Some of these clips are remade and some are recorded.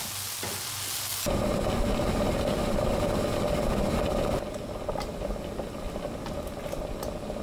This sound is recorded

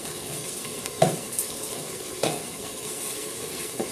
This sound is remade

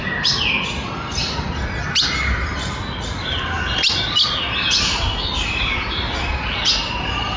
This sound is recorded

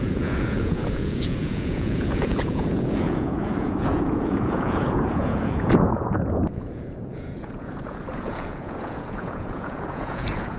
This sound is remade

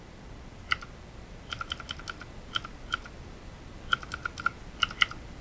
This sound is recorded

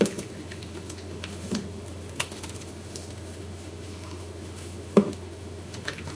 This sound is remade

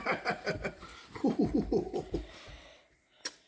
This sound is remade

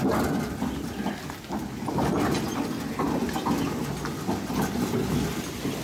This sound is recorded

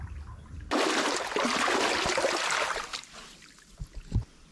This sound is recorded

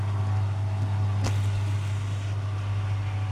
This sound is recorded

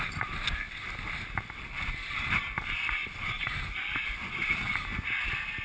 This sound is recorded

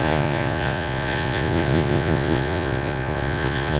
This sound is remade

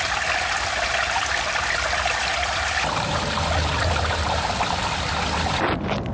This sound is recorded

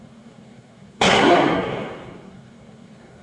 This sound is remade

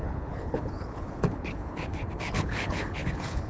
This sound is remade